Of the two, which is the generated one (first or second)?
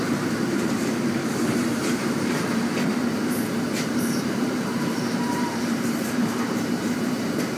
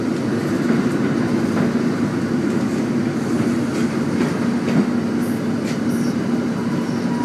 first